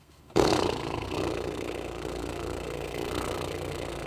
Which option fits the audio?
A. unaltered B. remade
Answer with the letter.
B